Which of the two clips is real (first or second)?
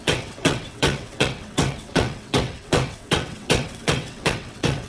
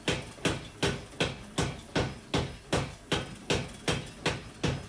second